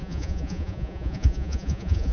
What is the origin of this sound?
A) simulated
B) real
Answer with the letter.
A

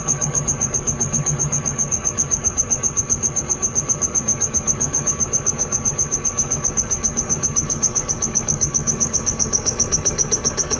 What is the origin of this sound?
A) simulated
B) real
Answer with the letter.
A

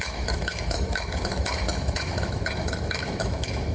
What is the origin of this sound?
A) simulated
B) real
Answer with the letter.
A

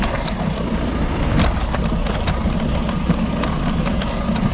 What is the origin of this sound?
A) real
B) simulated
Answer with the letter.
A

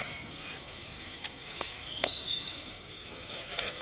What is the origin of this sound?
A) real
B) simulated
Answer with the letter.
B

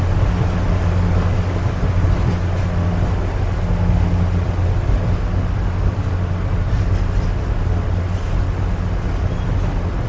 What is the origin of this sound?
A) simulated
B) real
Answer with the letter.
B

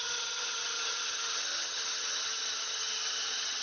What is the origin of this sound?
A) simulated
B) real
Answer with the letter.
A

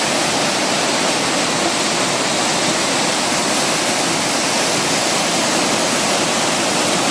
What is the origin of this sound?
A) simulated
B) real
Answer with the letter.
B